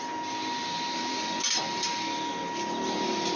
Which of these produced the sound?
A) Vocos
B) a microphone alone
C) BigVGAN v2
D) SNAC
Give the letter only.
B